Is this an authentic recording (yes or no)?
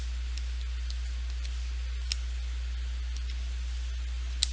yes